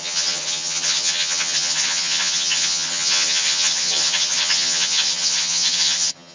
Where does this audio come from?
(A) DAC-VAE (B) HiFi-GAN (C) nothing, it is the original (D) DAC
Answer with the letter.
B